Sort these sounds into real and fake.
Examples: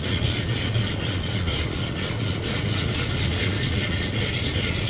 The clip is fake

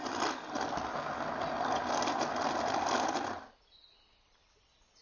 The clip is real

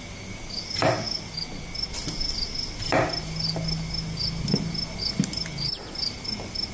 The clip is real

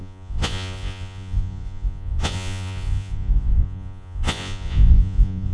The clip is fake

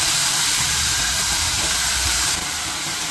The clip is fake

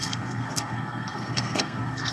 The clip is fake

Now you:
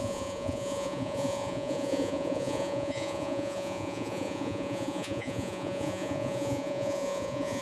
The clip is fake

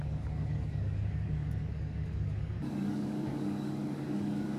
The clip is fake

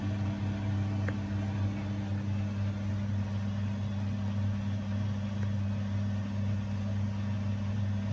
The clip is real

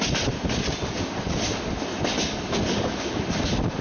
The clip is real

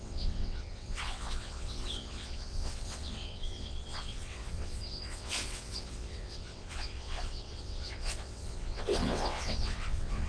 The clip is fake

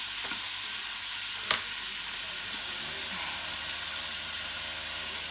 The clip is real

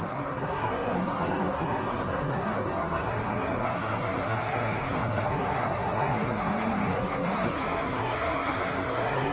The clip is fake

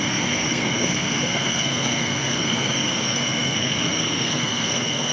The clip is fake